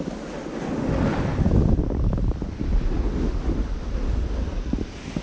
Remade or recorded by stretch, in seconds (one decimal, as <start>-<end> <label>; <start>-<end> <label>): 0.0-5.2 recorded